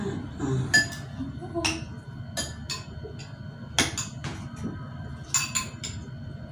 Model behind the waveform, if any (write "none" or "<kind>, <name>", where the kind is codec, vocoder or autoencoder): none